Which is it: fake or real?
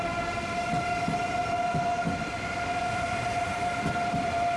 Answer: real